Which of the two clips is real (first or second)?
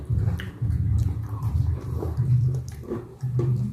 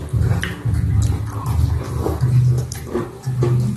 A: second